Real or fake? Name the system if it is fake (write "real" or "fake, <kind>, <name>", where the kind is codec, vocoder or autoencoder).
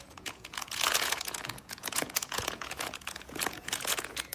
fake, vocoder, Vocos